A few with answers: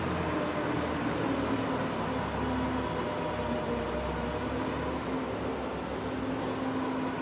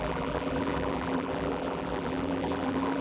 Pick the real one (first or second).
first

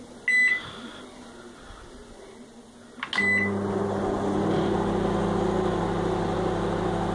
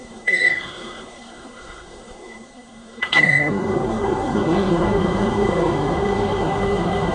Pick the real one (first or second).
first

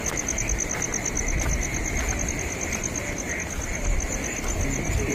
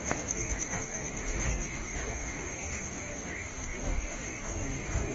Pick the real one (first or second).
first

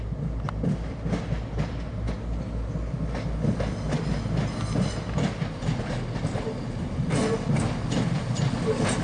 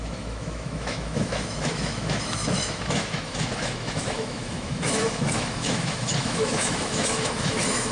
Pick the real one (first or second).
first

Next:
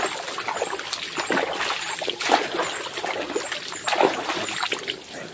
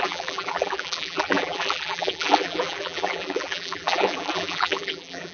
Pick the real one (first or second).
first